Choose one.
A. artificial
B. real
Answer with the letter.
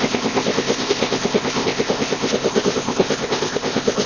A